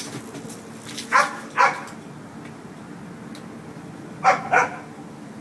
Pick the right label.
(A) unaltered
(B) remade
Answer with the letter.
A